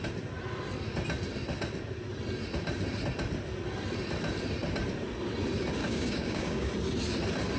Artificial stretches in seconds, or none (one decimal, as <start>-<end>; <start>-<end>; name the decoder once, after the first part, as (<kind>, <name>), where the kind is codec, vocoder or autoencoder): 5.8-6.7 (codec, DAC)

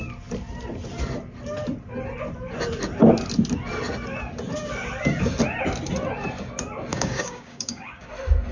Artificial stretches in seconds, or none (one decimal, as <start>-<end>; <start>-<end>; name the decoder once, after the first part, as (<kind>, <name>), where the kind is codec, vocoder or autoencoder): 6.9-8.1 (codec, DAC)

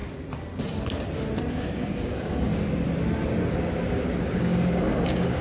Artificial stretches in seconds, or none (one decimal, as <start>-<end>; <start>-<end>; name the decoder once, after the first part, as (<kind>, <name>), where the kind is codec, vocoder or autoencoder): 1.5-2.5 (codec, DAC); 4.3-5.4

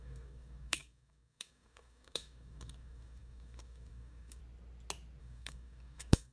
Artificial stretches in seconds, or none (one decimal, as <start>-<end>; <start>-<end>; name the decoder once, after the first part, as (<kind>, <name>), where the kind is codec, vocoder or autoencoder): 0.0-4.4 (codec, DAC); 5.2-6.3

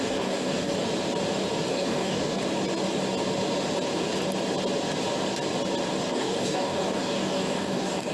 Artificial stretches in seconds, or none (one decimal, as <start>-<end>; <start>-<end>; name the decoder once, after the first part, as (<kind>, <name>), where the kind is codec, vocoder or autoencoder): 0.0-0.7 (codec, DAC); 1.7-2.4; 6.1-8.1

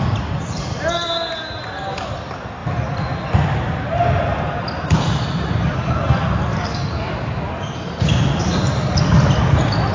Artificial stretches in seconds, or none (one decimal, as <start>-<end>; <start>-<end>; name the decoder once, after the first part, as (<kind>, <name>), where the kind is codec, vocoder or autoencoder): 6.5-7.3 (codec, DAC)